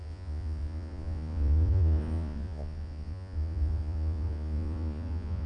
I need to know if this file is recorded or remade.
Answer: remade